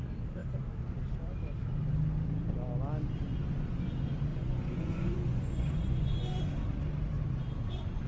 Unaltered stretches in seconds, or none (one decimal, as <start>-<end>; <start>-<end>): 0.0-4.3; 6.4-8.1